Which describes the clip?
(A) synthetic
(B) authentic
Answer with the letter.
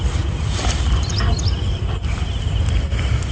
B